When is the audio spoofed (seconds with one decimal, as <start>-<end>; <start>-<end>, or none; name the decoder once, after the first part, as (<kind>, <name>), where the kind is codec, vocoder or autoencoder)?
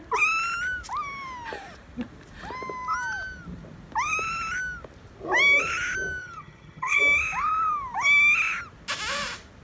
6.2-7.0 (vocoder, HiFi-GAN)